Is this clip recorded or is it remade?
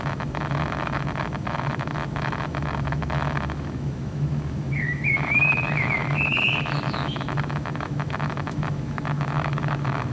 remade